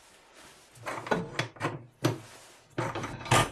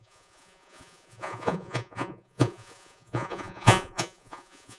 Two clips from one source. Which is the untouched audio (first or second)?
first